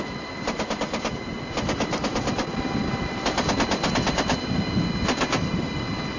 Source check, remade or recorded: recorded